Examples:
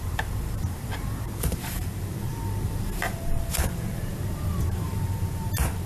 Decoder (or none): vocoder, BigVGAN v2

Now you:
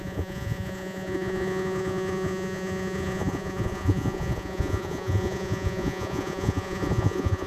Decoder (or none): vocoder, Vocos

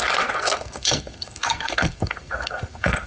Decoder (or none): codec, SNAC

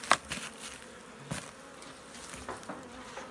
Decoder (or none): none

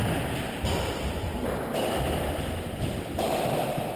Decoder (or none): vocoder, BigVGAN v2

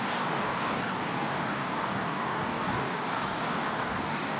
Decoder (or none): codec, DAC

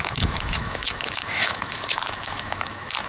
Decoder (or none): autoencoder, DAC-VAE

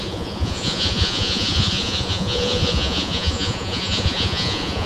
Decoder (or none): vocoder, Vocos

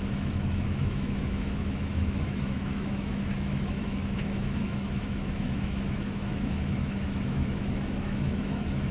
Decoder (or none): autoencoder, DAC-VAE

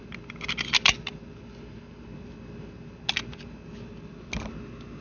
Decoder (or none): none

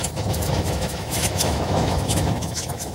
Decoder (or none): autoencoder, DAC-VAE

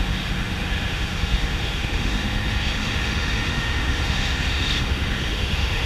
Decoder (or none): autoencoder, DAC-VAE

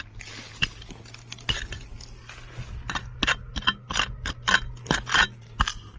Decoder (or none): none